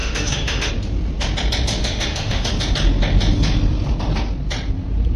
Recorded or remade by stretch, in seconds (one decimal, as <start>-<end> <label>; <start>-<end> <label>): 0.0-0.7 remade; 0.7-1.8 recorded; 1.8-2.5 remade; 2.5-5.2 recorded